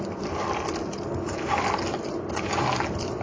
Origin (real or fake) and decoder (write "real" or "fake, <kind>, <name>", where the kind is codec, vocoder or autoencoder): real